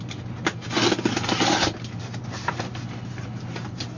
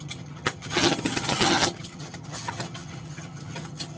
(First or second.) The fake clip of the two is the second